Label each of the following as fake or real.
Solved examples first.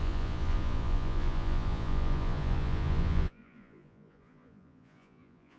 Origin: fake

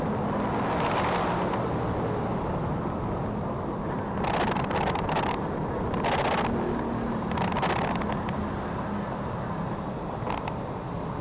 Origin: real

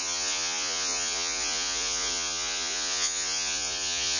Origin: fake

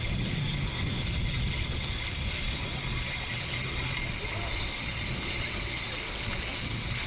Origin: real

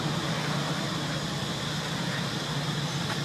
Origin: real